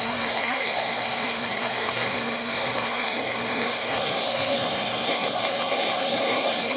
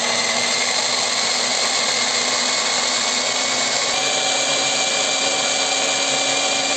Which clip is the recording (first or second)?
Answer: second